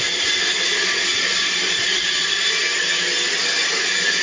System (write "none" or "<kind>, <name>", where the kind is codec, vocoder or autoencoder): none